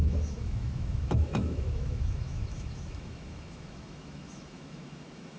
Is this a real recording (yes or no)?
no